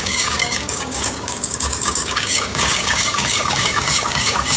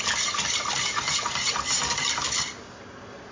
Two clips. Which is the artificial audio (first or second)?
first